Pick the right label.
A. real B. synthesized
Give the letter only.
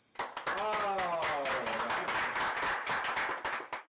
A